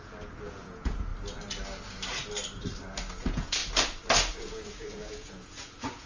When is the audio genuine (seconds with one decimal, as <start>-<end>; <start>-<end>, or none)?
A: 1.1-3.1; 3.6-4.3